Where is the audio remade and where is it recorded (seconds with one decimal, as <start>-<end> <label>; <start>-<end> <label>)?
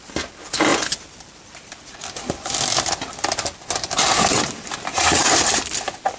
0.0-6.2 recorded